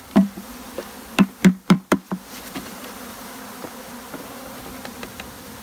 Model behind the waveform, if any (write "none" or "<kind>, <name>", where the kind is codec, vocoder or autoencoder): vocoder, BigVGAN v2